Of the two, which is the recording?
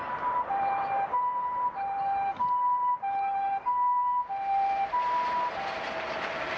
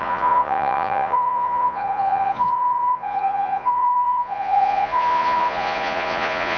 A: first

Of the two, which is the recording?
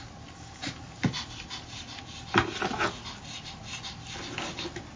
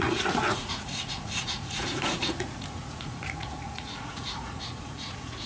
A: first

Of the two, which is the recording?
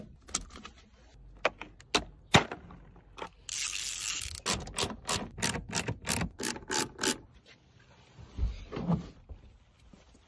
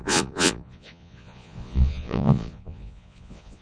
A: first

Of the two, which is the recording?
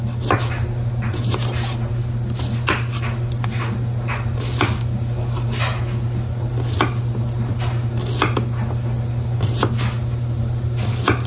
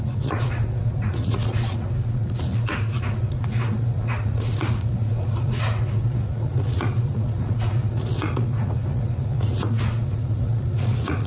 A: first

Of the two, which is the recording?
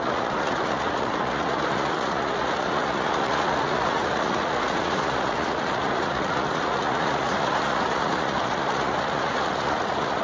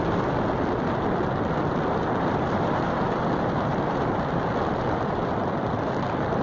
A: second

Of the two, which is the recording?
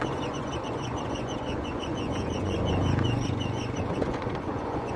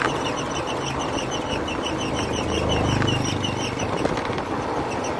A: second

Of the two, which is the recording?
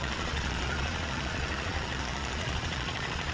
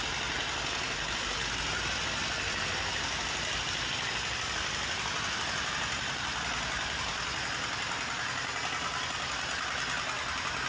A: second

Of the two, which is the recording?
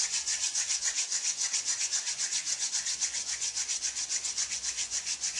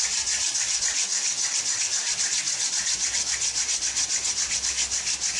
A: second